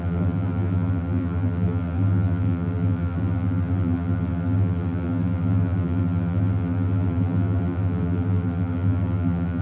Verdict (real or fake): fake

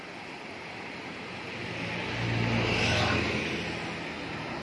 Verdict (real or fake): real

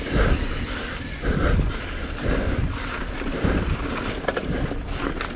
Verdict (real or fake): fake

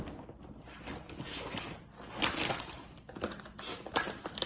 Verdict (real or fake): real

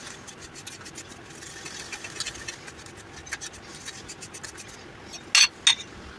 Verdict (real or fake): real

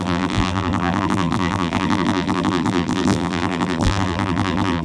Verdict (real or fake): fake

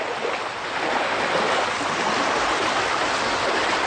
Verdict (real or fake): real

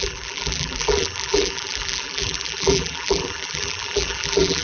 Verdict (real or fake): fake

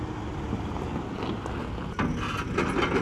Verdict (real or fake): real